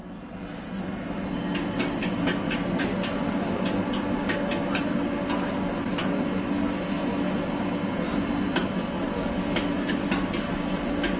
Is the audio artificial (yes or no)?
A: no